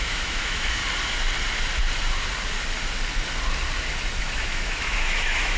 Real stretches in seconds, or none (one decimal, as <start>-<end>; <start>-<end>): 0.8-4.2